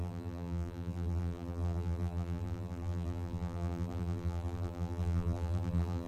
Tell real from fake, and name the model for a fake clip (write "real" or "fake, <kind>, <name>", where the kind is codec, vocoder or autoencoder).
fake, vocoder, BigVGAN v2